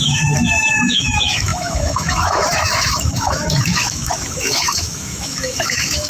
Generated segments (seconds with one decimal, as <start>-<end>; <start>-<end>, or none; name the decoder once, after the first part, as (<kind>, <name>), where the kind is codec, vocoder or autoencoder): 0.0-6.1 (autoencoder, DAC-VAE)